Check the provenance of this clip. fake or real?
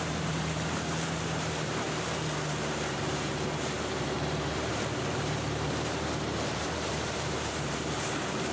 fake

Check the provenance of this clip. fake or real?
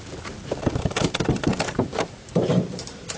fake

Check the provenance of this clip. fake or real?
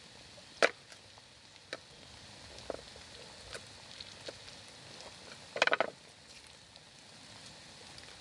real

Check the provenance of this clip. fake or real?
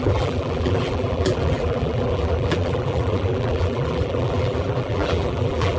fake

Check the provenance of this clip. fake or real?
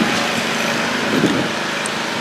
real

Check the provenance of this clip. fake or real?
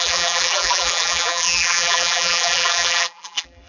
fake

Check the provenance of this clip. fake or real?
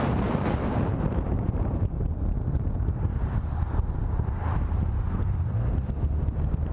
fake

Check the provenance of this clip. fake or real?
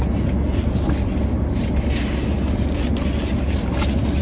real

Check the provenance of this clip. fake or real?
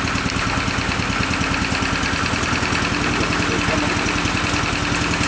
real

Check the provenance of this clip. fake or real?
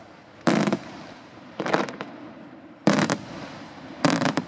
fake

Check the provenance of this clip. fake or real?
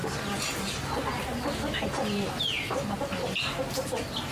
real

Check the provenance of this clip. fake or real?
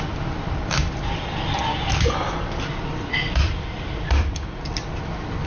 fake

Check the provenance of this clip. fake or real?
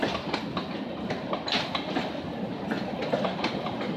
real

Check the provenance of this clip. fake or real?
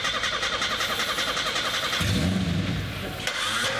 real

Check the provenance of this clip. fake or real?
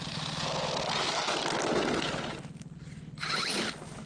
real